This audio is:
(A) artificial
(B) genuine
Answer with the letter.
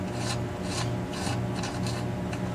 B